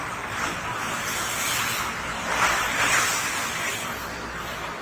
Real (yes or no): yes